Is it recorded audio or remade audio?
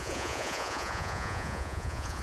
remade